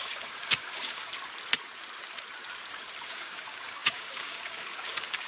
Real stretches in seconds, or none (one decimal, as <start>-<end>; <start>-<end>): 1.1-3.1